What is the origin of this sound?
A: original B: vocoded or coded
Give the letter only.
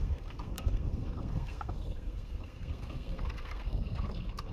B